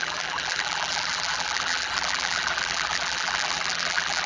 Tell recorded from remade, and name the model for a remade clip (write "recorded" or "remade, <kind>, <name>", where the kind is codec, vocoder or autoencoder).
remade, vocoder, BigVGAN v2